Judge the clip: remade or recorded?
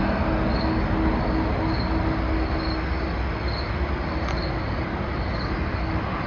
recorded